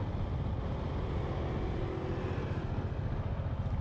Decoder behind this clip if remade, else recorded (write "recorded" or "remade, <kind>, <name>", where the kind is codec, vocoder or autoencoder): recorded